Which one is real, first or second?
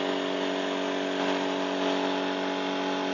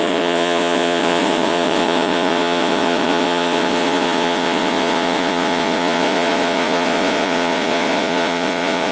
first